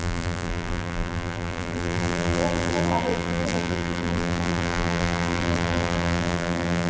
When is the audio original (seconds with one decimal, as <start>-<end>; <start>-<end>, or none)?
none